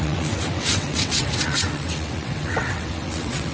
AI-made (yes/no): yes